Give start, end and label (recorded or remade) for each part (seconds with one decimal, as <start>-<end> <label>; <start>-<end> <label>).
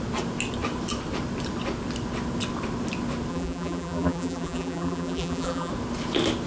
0.0-3.3 recorded; 3.3-5.7 remade; 5.7-6.5 recorded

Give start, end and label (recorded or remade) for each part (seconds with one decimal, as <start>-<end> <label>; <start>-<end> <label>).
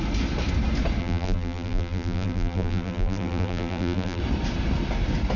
0.0-1.0 recorded; 1.0-4.2 remade; 4.2-5.4 recorded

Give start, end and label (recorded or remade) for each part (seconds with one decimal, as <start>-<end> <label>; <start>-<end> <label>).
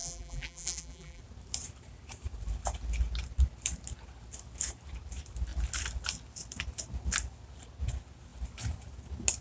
0.0-1.2 remade; 1.2-9.4 recorded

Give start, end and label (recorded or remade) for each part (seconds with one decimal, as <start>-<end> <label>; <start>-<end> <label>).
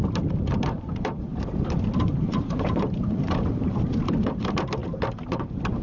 0.0-1.3 remade; 1.3-2.0 recorded; 2.0-5.8 remade